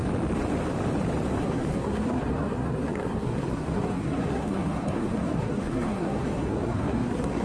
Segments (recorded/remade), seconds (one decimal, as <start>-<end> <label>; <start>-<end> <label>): 0.0-1.4 recorded; 1.4-7.4 remade